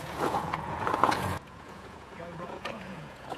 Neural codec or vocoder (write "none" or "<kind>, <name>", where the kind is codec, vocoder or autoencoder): vocoder, Vocos